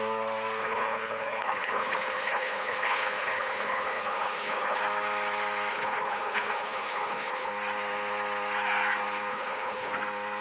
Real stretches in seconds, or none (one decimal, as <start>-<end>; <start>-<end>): 0.0-0.6; 4.8-5.7; 7.5-9.3; 9.9-10.4